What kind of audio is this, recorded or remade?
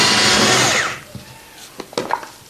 recorded